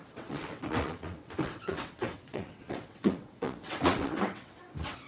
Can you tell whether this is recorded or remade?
remade